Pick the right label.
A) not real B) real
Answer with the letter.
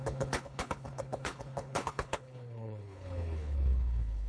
A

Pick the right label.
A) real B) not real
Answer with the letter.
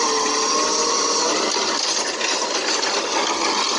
A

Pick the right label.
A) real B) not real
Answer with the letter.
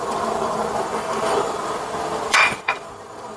B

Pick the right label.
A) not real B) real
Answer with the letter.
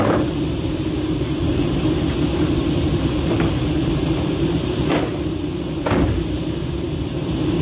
A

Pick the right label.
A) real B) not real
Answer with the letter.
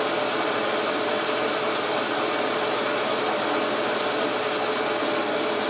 A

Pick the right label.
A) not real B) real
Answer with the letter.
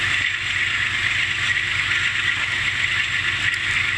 B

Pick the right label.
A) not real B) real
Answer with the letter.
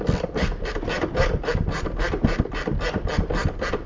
B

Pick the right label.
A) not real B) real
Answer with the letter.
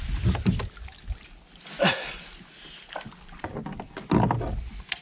B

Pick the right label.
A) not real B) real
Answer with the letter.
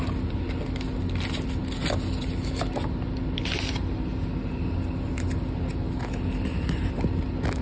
B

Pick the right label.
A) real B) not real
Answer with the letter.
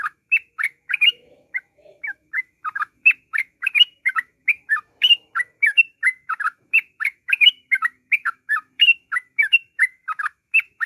B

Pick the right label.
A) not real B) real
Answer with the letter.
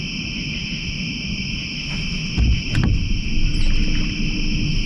B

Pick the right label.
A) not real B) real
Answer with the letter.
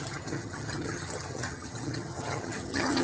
A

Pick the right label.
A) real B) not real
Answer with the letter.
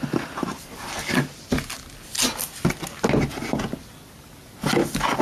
A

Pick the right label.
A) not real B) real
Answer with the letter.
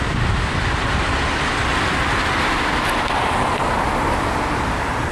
B